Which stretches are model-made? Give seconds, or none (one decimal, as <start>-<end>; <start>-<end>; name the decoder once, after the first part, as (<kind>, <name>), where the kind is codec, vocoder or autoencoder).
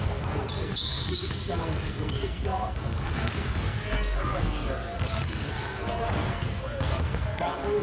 0.0-7.8 (codec, SNAC)